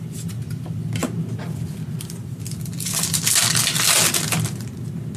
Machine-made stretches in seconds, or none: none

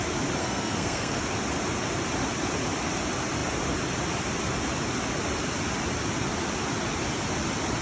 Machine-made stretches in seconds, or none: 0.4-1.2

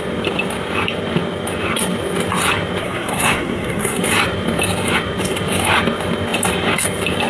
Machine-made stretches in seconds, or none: 2.8-4.0

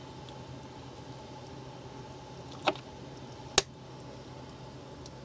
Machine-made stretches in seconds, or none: none